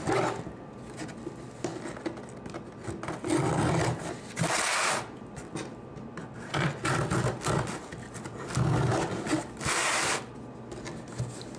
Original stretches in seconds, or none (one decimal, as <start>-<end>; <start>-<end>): 0.0-11.6